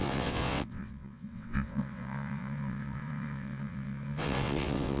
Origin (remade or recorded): remade